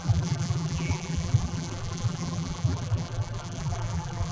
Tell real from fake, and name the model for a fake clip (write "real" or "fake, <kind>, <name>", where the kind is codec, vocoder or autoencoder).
fake, vocoder, BigVGAN v2